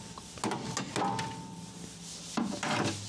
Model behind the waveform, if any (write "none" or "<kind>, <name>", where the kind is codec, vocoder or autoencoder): none